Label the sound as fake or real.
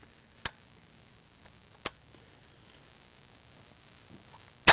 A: real